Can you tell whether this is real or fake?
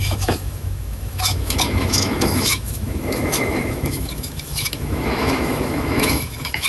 fake